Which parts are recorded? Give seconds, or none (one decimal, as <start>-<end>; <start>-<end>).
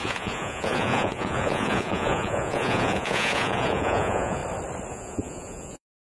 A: 4.4-4.9